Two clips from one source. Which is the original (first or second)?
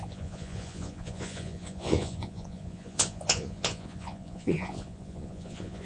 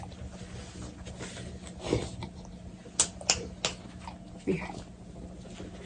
second